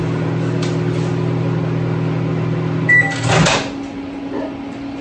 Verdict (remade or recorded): recorded